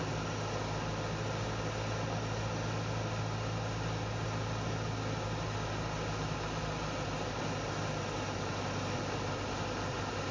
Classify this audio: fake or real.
real